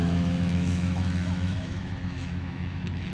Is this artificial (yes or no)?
yes